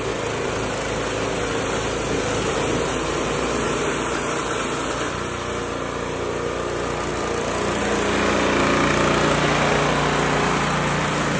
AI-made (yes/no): no